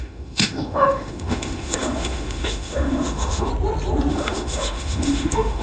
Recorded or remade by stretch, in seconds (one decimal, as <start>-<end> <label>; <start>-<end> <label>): 0.0-3.5 remade; 3.5-4.1 recorded; 4.1-5.6 remade